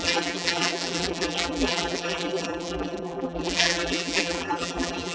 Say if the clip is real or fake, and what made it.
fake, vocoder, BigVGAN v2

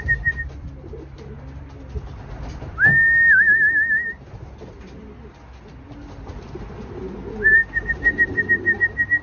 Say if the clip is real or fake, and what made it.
real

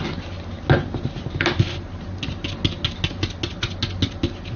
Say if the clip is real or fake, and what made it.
real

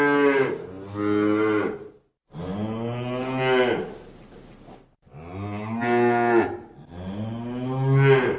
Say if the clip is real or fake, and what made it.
real